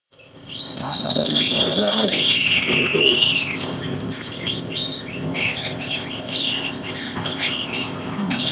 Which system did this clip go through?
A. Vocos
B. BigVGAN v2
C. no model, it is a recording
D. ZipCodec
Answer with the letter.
D